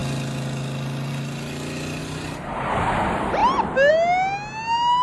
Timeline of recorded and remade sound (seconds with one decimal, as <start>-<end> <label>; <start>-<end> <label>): 0.0-2.0 recorded; 2.0-2.8 remade; 2.8-5.0 recorded

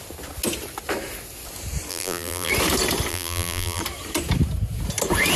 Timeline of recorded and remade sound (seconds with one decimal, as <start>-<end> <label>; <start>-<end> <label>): 0.0-1.9 recorded; 1.9-2.5 remade; 2.5-3.1 recorded; 3.1-3.8 remade; 3.8-5.4 recorded

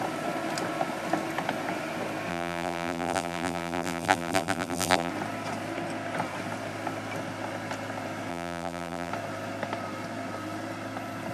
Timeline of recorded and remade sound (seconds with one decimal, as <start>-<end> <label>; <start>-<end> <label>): 0.0-2.3 recorded; 2.3-5.1 remade; 5.1-8.3 recorded; 8.3-9.1 remade; 9.1-11.3 recorded